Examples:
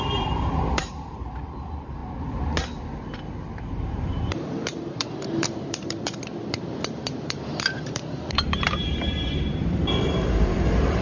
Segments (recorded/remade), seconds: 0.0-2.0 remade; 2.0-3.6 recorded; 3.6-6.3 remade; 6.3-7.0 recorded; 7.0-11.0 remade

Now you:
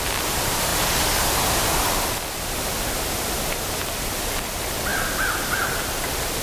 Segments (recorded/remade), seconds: 0.0-6.4 recorded

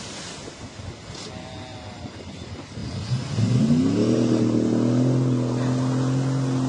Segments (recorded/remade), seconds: 0.0-1.7 recorded; 1.7-2.4 remade; 2.4-6.7 recorded

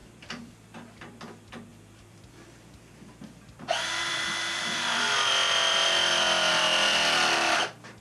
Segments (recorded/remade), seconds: 0.0-0.5 remade; 0.5-1.7 recorded; 1.7-6.5 remade; 6.5-8.0 recorded